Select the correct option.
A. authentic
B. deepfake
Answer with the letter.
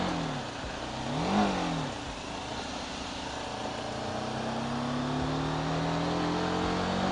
A